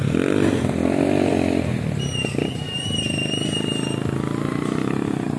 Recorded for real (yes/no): yes